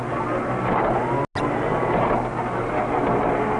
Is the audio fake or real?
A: real